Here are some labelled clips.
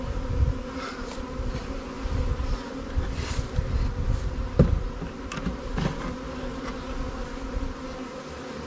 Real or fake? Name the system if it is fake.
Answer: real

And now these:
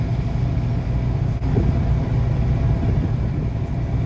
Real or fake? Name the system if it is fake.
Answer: real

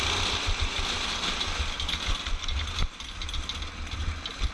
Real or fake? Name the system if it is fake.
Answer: real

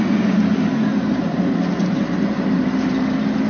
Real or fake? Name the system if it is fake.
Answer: real